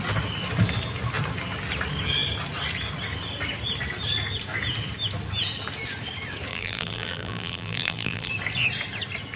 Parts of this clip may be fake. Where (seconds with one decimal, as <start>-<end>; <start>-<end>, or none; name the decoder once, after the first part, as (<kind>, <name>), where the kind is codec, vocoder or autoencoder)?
6.5-8.3 (vocoder, BigVGAN v2)

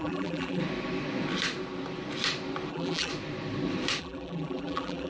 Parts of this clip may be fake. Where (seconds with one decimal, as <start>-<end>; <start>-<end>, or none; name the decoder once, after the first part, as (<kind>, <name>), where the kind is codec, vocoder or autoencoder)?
0.0-0.6 (vocoder, BigVGAN v2); 2.7-3.1; 4.0-5.1

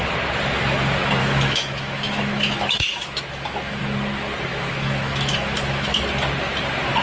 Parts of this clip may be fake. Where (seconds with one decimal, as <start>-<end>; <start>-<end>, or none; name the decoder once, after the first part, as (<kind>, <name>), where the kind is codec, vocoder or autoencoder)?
1.2-3.8 (autoencoder, DAC-VAE); 4.5-6.0

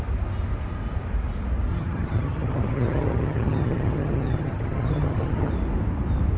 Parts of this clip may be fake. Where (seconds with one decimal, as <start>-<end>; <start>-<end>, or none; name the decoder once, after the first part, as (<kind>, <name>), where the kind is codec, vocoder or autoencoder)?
1.7-5.5 (vocoder, HiFi-GAN)

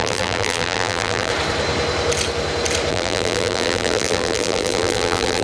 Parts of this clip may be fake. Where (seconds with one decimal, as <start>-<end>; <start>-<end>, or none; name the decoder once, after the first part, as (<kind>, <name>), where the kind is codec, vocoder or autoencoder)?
0.0-1.3 (vocoder, BigVGAN v2); 2.9-5.4

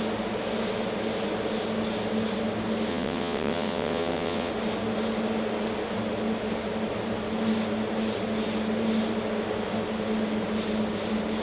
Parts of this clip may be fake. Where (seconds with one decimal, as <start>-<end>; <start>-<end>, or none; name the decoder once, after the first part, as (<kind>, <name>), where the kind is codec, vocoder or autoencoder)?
2.9-4.5 (vocoder, WaveNeXt)